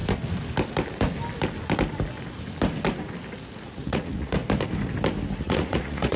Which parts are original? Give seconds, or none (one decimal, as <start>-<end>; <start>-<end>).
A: 0.0-3.7; 4.4-5.4